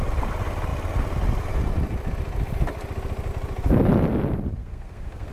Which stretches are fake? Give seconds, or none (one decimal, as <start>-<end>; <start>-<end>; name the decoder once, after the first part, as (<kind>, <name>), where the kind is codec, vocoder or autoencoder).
4.6-5.3 (codec, SNAC)